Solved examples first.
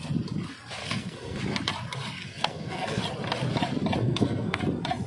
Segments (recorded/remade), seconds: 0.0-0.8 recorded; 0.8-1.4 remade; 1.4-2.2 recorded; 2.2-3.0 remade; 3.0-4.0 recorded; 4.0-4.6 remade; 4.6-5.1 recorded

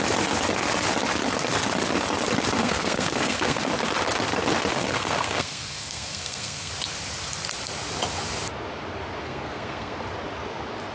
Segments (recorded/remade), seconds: 0.0-2.6 recorded; 2.6-3.7 remade; 3.7-4.7 recorded; 4.7-6.7 remade; 6.7-9.2 recorded; 9.2-10.0 remade; 10.0-10.9 recorded